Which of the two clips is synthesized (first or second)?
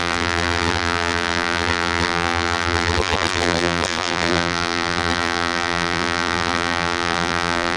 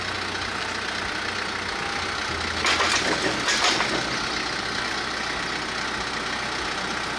first